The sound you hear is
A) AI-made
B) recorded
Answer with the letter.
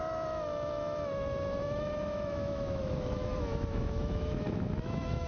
A